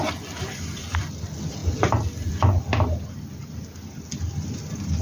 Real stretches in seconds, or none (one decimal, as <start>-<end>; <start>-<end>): 0.0-5.0